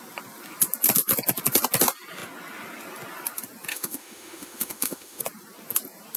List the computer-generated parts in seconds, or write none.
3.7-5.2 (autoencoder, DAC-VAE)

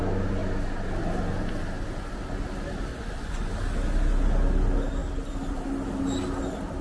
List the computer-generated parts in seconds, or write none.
2.9-3.5 (vocoder, Vocos)

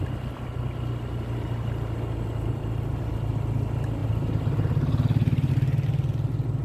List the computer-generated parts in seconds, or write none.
none

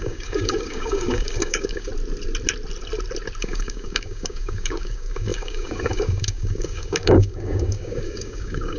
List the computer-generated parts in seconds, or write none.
0.0-1.9 (codec, DAC); 3.4-8.8

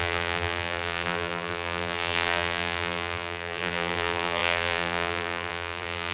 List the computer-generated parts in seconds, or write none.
0.0-6.1 (vocoder, BigVGAN v2)

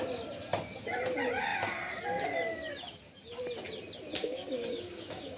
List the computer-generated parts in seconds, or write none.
4.1-5.4 (codec, DAC)

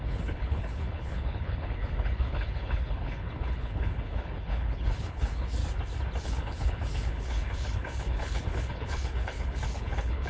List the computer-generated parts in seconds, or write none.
0.0-5.6 (codec, HILCodec); 6.2-10.3